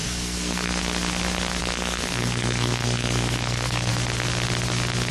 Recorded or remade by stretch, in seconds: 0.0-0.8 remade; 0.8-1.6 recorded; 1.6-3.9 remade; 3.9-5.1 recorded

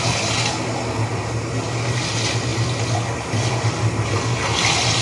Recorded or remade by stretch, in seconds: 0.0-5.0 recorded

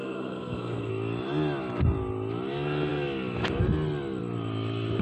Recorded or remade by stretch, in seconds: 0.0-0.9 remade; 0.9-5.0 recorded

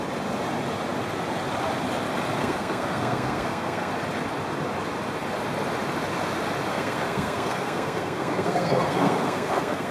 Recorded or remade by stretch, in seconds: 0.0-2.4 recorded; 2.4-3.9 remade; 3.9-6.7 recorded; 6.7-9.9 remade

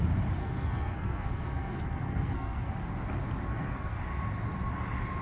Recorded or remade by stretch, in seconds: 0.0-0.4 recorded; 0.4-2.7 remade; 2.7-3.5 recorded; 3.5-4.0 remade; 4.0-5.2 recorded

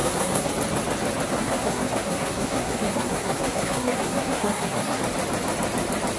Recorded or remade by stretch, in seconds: 0.0-0.5 remade; 0.5-1.3 recorded; 1.3-5.0 remade; 5.0-6.2 recorded